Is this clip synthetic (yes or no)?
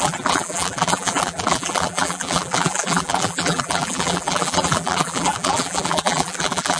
yes